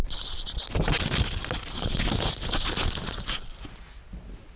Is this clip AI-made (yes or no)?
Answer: no